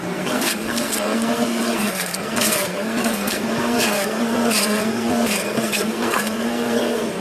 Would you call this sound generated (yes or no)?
yes